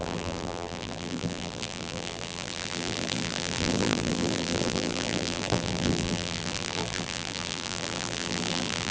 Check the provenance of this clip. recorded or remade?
remade